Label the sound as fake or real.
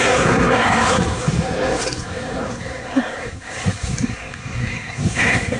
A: fake